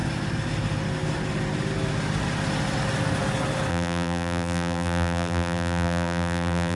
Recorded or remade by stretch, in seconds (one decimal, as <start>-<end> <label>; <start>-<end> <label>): 0.0-3.7 recorded; 3.7-6.8 remade